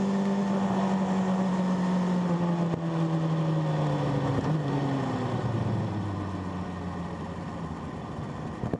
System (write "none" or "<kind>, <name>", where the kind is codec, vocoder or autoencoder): none